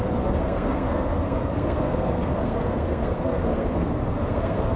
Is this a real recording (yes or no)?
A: no